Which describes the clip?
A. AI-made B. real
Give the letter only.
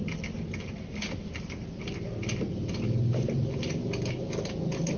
B